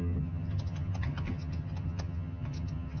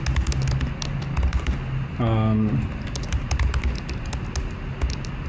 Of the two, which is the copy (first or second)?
first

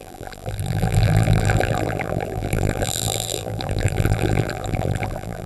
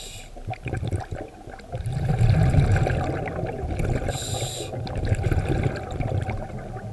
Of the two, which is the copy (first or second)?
first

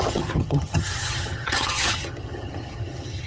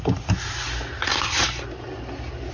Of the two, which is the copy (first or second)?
first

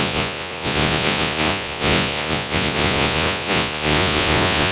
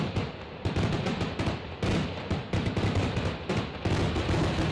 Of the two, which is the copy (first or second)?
first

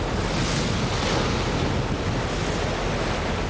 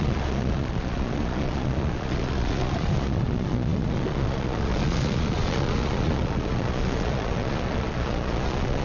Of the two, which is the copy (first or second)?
second